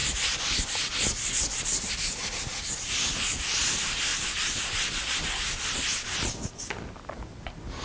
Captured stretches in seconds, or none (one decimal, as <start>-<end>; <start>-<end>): 0.0-7.8